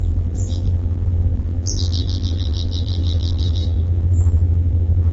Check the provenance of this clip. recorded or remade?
remade